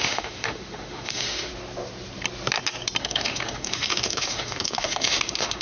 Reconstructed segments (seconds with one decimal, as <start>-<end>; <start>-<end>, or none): 0.0-1.5; 3.0-5.6